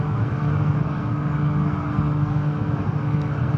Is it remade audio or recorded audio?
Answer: remade